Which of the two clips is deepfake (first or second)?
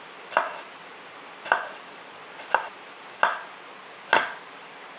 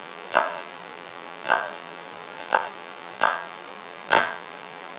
second